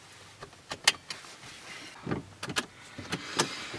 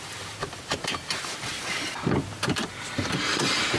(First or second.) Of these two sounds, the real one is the first